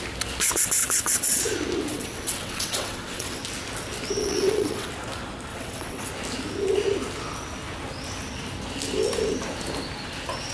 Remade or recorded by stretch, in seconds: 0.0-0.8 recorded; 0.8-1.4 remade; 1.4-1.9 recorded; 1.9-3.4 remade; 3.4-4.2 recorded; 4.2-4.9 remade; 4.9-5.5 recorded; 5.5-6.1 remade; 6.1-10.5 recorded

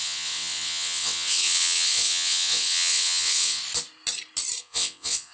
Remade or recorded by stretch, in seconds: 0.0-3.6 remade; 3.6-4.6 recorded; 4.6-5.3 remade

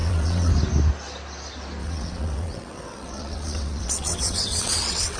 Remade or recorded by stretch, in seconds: 0.0-0.5 remade; 0.5-1.8 recorded; 1.8-5.2 remade

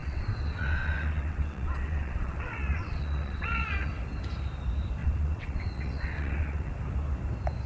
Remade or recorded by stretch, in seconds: 0.0-3.9 remade; 3.9-5.0 recorded; 5.0-6.7 remade; 6.7-7.7 recorded